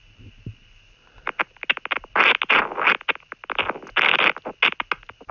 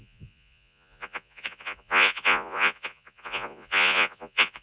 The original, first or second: first